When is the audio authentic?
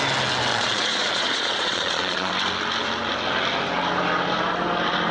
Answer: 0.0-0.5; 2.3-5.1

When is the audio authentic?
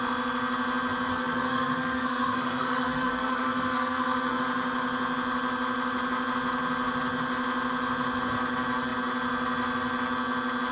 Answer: 0.0-1.1; 4.4-10.7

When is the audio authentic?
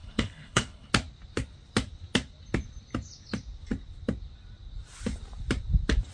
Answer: 0.9-6.1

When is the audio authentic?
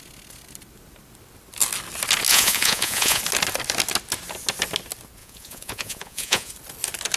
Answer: 0.0-2.3; 3.2-5.2; 6.5-7.2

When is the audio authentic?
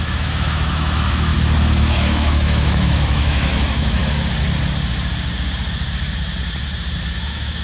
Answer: 1.3-1.8; 4.0-7.1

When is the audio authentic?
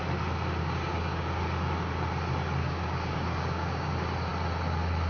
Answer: 0.0-0.6; 1.4-2.6; 3.9-5.1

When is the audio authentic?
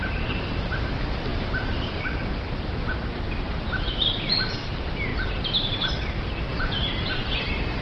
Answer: 0.0-7.8